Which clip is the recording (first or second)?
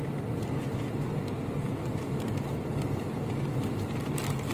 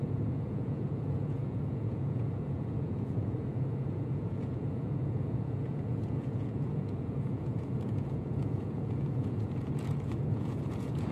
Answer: first